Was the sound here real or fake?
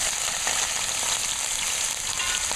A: real